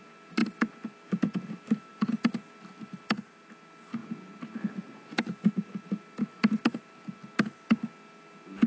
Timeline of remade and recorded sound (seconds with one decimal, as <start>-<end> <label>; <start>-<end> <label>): 0.0-8.7 recorded